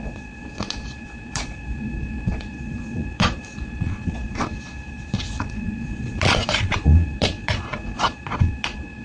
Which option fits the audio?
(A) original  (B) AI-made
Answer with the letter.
B